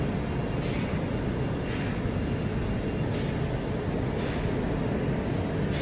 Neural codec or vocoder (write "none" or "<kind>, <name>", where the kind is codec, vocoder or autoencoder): none